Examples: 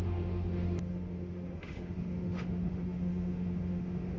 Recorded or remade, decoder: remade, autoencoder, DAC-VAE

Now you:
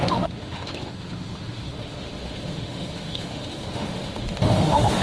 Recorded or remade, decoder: remade, autoencoder, DAC-VAE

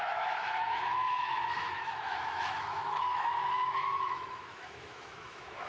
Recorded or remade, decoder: remade, autoencoder, DAC-VAE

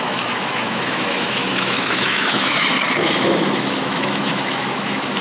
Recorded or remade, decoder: remade, autoencoder, DAC-VAE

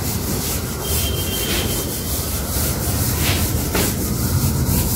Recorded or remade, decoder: recorded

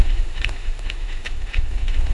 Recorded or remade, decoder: remade, autoencoder, DAC-VAE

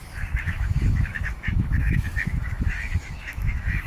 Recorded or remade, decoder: remade, autoencoder, DAC-VAE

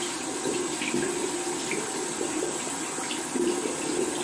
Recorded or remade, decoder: recorded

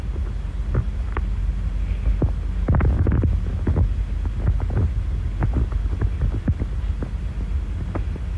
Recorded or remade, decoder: recorded